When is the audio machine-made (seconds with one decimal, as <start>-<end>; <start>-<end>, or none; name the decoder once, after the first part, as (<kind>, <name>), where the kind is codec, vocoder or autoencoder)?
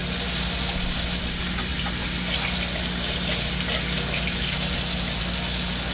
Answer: none